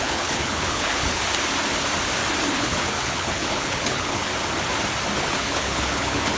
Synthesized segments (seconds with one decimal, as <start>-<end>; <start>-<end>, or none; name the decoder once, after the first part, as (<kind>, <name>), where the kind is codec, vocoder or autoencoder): 0.0-1.2 (codec, HILCodec); 2.5-4.3; 5.2-6.4